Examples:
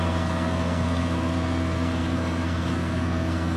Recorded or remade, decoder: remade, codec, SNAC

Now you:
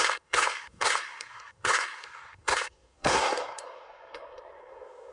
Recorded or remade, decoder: remade, codec, SNAC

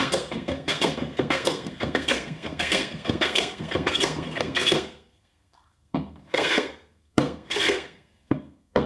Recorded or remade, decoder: remade, codec, SNAC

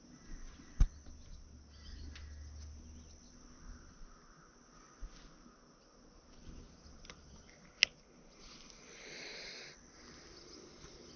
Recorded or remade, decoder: recorded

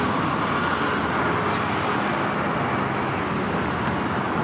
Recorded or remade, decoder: recorded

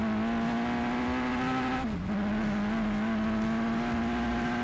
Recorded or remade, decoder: recorded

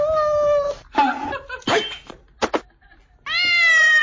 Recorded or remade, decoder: recorded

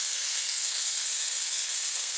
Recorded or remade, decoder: remade, codec, SNAC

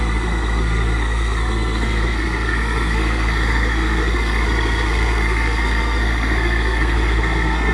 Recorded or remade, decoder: remade, codec, SNAC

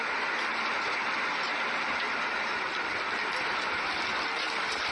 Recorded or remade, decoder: recorded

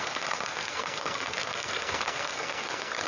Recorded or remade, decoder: remade, codec, SNAC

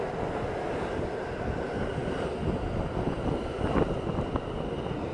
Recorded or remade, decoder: recorded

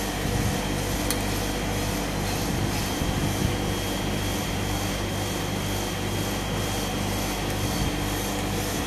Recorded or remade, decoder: recorded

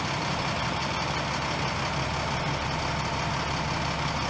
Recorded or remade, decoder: recorded